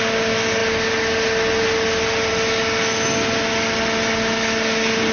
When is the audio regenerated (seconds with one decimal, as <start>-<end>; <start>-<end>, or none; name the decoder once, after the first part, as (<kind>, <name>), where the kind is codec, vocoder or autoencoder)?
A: none